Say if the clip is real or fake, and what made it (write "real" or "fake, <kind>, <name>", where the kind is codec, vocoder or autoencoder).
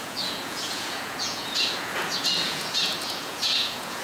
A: fake, vocoder, Vocos